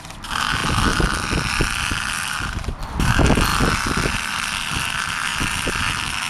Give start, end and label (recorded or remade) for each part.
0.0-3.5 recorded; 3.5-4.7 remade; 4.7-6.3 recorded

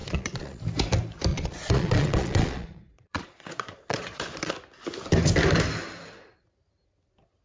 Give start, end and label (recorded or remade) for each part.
0.0-0.6 remade; 0.6-1.3 recorded; 1.3-4.5 remade; 4.5-7.4 recorded